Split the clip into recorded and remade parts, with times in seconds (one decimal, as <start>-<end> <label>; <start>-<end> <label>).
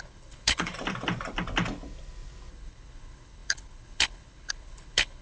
0.0-0.7 remade; 0.7-2.5 recorded; 2.5-5.2 remade